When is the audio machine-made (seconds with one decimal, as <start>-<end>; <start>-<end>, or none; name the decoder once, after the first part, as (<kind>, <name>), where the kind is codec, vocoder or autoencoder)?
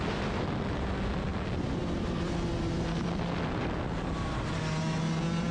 none